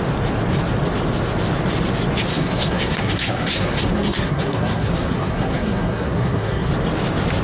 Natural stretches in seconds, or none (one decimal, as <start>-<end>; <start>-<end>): 0.0-2.3; 6.7-7.4